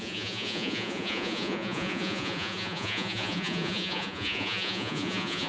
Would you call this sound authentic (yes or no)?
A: no